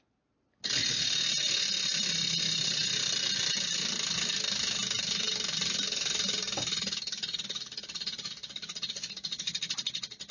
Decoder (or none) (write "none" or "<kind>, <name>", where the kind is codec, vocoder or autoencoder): none